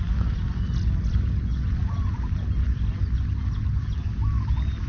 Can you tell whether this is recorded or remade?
recorded